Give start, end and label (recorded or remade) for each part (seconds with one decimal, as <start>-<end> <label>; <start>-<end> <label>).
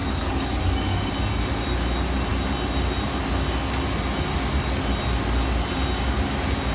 0.0-1.1 remade; 1.1-6.7 recorded